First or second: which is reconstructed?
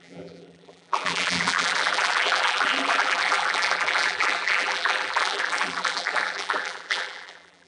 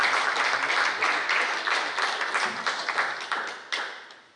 first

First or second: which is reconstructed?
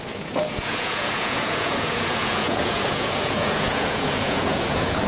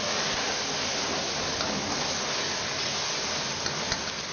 first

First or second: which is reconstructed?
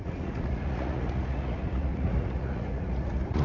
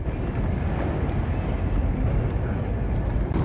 first